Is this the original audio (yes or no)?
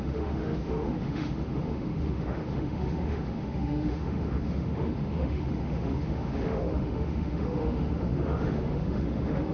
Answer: no